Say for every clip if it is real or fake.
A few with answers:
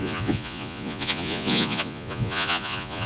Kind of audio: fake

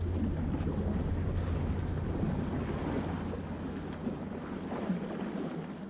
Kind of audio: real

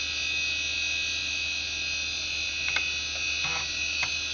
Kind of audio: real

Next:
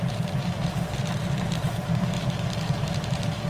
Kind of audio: fake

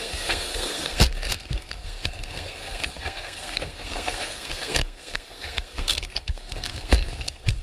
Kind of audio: fake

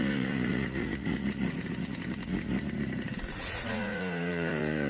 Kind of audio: fake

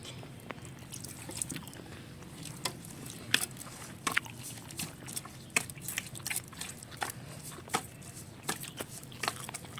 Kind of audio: real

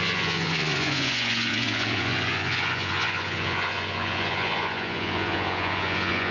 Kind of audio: fake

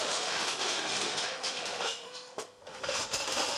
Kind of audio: fake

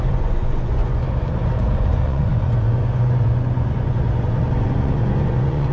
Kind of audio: fake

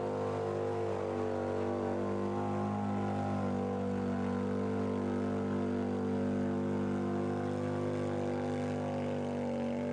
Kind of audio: real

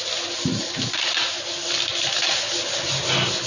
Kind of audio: real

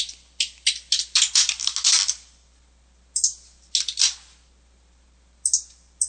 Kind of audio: real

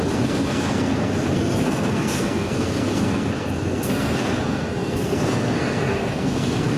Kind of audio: fake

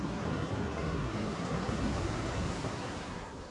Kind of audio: fake